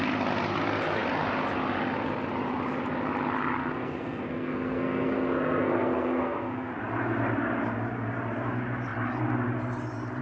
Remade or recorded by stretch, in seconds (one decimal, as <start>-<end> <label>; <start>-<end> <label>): 0.0-3.6 recorded; 3.6-6.7 remade; 6.7-10.2 recorded